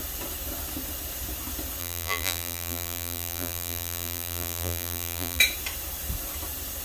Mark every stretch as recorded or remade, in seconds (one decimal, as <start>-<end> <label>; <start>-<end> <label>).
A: 0.0-1.8 recorded; 1.8-5.4 remade; 5.4-6.8 recorded